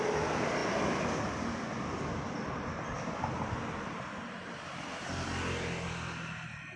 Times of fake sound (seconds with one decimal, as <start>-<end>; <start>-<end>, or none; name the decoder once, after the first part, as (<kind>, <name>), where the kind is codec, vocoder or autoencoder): none